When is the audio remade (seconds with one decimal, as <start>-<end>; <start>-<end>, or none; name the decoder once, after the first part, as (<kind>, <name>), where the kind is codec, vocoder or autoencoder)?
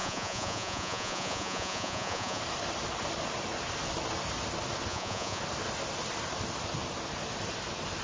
0.0-2.4 (vocoder, Vocos); 4.9-5.4